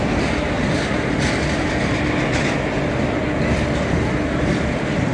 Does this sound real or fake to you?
real